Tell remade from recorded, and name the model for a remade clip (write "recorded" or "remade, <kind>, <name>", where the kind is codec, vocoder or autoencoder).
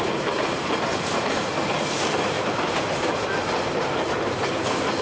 recorded